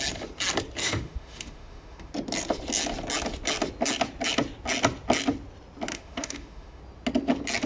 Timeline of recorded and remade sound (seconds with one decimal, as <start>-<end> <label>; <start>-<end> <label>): 0.0-0.8 recorded; 0.8-2.1 remade; 2.1-5.9 recorded; 5.9-6.8 remade; 6.8-7.7 recorded